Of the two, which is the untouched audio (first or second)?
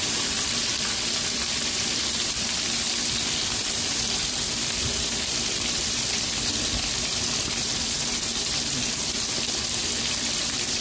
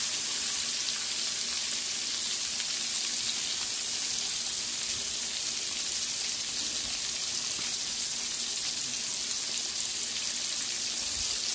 second